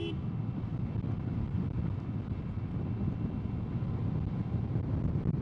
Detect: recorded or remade recorded